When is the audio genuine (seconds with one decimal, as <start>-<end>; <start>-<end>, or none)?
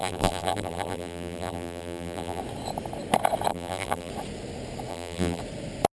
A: 2.4-3.5; 4.1-4.9; 5.4-5.9